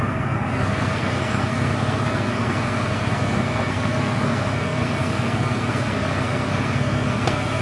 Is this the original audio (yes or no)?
no